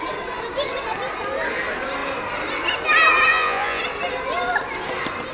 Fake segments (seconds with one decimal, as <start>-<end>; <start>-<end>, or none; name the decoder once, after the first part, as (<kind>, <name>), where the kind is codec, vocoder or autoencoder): 3.3-3.8 (vocoder, Vocos)